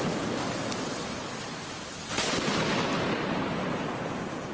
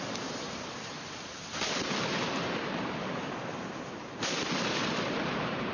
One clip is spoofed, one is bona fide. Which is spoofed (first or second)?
second